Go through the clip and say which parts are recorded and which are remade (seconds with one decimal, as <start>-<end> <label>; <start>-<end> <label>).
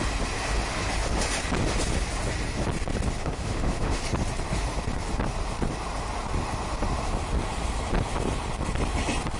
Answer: 0.0-3.2 recorded; 3.2-4.0 remade; 4.0-9.4 recorded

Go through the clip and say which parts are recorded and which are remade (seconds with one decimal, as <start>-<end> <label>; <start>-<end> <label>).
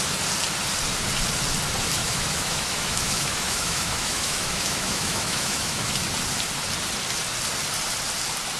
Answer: 0.0-2.0 recorded; 2.0-6.0 remade; 6.0-8.6 recorded